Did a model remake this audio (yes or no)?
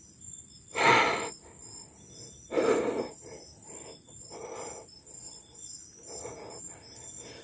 no